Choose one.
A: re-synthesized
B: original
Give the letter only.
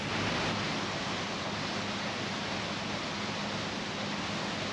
B